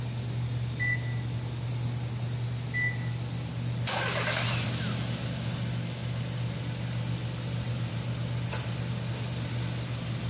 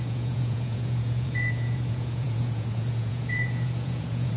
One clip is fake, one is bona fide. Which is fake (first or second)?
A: second